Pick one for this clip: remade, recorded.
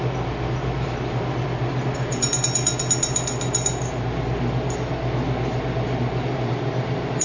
recorded